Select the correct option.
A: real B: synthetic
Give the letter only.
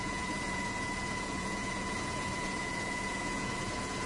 B